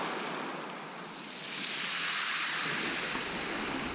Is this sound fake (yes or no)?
no